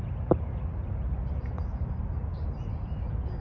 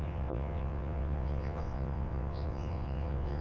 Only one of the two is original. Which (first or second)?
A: first